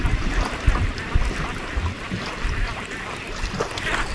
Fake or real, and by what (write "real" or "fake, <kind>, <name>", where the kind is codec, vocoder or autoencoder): real